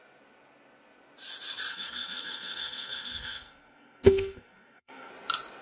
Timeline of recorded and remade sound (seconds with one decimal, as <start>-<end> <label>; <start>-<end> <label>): 0.0-1.7 recorded; 1.7-5.1 remade; 5.1-5.6 recorded